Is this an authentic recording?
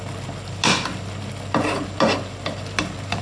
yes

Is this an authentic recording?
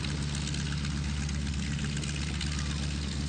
yes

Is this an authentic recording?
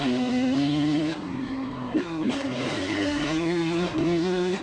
no